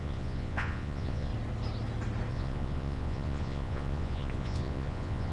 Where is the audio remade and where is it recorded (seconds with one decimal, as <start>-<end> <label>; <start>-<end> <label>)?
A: 0.0-1.3 remade; 1.3-2.3 recorded; 2.3-5.3 remade